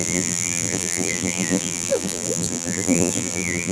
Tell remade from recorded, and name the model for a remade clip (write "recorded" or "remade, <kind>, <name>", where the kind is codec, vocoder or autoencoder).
remade, vocoder, BigVGAN v2